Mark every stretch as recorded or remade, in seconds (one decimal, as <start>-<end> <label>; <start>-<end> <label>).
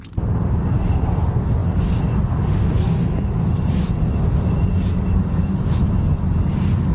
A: 0.0-6.9 recorded